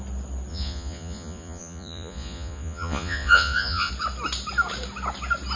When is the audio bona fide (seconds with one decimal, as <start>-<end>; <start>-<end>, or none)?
0.0-0.5; 3.9-5.6